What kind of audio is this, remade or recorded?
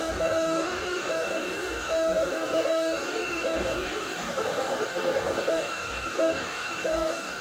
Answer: remade